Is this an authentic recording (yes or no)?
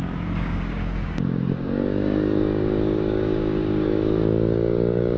no